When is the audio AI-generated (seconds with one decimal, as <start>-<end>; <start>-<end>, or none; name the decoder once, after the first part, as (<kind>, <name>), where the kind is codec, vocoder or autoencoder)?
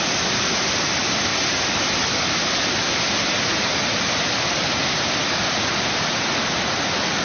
0.0-1.3 (vocoder, BigVGAN v2); 3.9-7.2